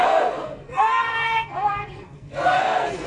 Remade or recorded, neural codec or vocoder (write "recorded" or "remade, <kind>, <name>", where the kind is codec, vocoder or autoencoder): remade, codec, SNAC